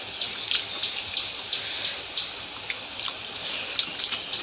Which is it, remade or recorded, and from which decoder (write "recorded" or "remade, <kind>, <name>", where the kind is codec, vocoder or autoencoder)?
recorded